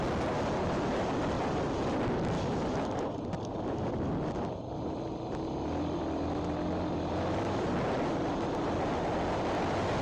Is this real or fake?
real